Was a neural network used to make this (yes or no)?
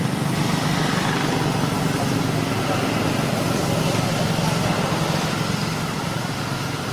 no